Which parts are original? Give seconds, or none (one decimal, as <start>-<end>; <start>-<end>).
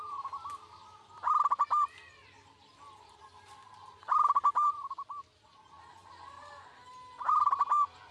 0.0-3.6; 4.5-8.1